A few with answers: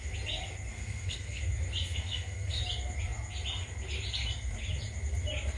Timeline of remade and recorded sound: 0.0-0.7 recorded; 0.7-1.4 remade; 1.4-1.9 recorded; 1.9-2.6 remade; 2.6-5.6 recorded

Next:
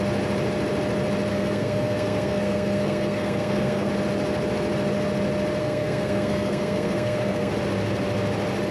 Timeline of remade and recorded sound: 0.0-1.3 recorded; 1.3-3.9 remade; 3.9-5.6 recorded; 5.6-7.5 remade; 7.5-8.7 recorded